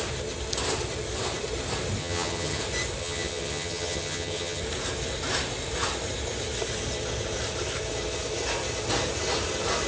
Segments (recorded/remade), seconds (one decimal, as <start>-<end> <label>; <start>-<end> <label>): 0.0-2.0 recorded; 2.0-2.6 remade; 2.6-3.0 recorded; 3.0-4.6 remade; 4.6-9.9 recorded